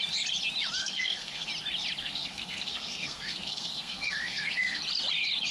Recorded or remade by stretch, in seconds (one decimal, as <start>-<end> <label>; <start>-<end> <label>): 0.0-0.8 recorded; 0.8-1.5 remade; 1.5-2.0 recorded; 2.0-4.8 remade; 4.8-5.5 recorded